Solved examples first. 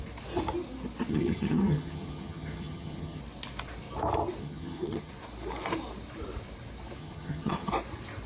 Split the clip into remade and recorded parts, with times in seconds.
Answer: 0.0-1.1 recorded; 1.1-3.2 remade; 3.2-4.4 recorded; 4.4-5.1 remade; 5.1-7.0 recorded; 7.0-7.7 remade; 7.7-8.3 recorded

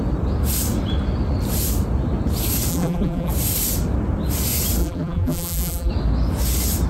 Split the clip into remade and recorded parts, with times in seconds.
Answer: 0.0-2.7 recorded; 2.7-3.3 remade; 3.3-4.8 recorded; 4.8-5.9 remade; 5.9-6.9 recorded

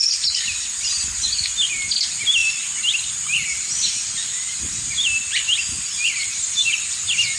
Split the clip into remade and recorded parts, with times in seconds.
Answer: 0.0-2.4 recorded; 2.4-6.7 remade; 6.7-7.4 recorded